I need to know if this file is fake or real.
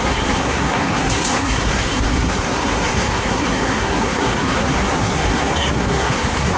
fake